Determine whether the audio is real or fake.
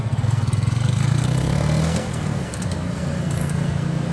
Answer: fake